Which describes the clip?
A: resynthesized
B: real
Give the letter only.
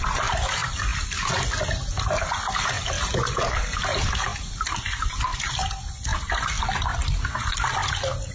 B